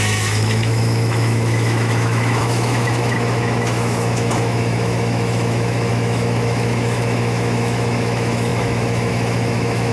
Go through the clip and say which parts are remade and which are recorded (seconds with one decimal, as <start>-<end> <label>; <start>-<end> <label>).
0.0-9.9 remade